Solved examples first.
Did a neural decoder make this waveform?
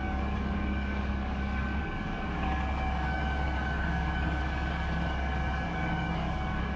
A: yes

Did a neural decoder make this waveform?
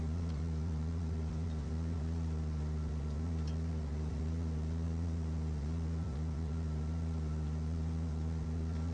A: yes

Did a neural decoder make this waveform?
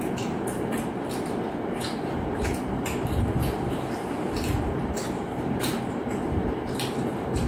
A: yes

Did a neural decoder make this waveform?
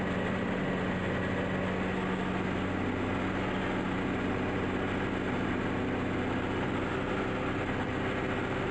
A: no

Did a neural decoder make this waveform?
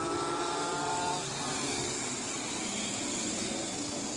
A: no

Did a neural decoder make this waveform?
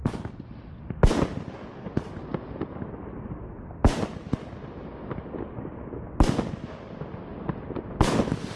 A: no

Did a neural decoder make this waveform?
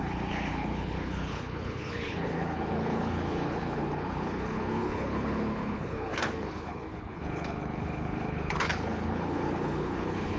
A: yes